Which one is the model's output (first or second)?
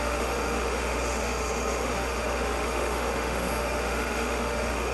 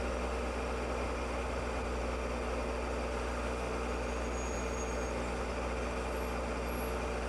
first